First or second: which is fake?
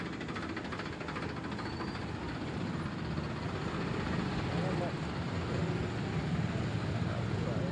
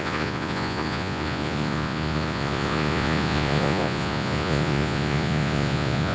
second